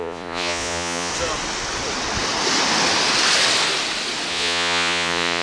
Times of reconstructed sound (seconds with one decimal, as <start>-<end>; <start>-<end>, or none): 0.0-1.1; 4.3-5.4

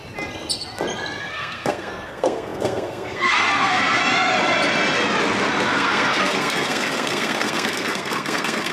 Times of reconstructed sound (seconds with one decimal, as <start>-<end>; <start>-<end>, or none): 1.2-4.0; 5.7-8.7

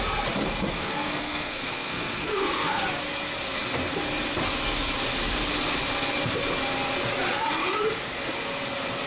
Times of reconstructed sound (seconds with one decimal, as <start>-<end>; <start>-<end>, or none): 0.7-2.8

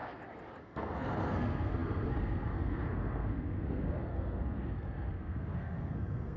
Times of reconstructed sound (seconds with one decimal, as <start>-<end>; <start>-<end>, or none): 0.6-6.4

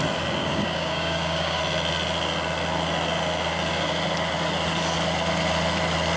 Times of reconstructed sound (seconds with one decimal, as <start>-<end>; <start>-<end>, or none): 0.4-1.6

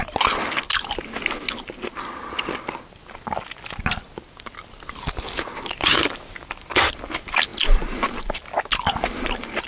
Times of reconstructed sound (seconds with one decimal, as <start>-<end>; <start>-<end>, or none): none